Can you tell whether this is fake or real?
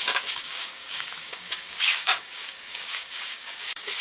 fake